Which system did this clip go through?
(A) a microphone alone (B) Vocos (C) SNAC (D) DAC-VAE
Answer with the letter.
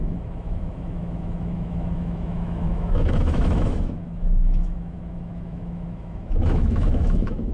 D